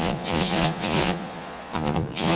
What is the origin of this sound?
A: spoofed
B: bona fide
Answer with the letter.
A